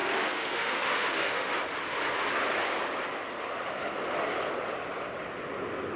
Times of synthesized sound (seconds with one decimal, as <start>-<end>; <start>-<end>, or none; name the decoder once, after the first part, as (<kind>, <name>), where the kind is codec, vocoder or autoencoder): 0.0-1.6 (autoencoder, DAC-VAE)